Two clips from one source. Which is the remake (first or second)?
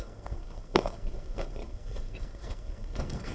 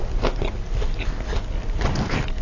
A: first